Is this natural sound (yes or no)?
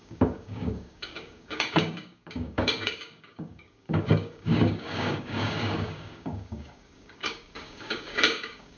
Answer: no